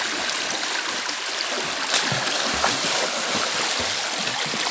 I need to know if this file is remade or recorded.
recorded